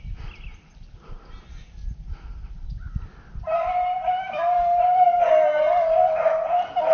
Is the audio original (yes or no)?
yes